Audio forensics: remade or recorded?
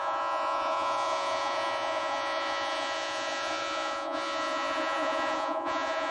remade